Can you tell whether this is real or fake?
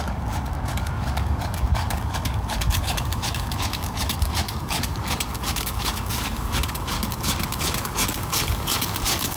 fake